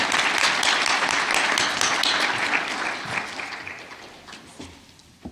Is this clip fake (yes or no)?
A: no